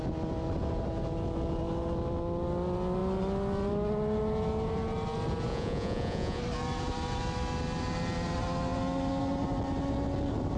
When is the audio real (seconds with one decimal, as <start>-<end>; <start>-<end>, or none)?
0.0-5.5; 6.4-10.6